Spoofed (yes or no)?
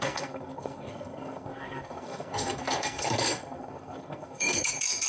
yes